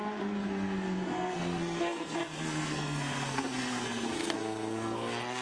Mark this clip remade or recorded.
remade